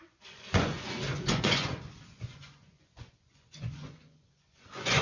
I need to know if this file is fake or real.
fake